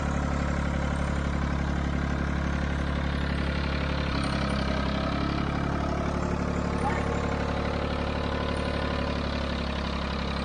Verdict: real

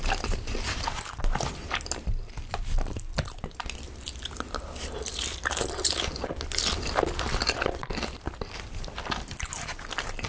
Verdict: real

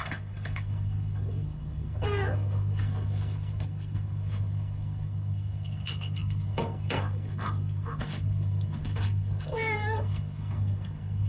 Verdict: fake